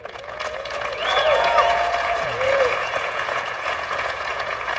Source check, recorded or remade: remade